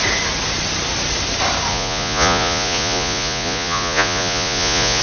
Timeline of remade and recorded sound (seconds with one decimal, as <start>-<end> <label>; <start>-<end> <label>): 0.0-1.7 recorded; 1.7-5.0 remade